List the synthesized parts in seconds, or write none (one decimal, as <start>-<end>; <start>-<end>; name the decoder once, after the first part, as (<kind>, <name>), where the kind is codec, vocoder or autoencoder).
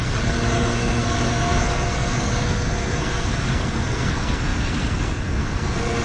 0.0-6.0 (codec, SNAC)